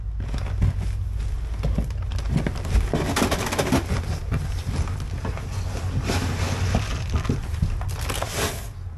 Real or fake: real